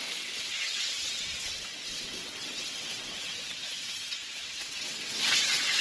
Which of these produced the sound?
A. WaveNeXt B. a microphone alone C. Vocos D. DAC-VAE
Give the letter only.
A